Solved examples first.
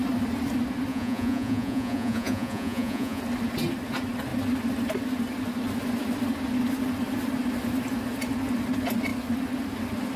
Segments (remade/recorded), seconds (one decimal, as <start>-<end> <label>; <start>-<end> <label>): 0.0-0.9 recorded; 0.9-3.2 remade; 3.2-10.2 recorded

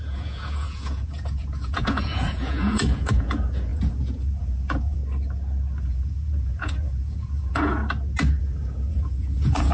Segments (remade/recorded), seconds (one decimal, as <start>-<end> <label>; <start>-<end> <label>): 0.0-5.0 remade; 5.0-5.8 recorded; 5.8-7.8 remade; 7.8-8.4 recorded; 8.4-9.7 remade

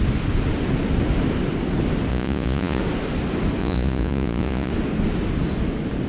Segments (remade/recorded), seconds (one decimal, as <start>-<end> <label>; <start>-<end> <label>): 0.0-2.1 recorded; 2.1-2.8 remade; 2.8-3.6 recorded; 3.6-4.7 remade; 4.7-6.1 recorded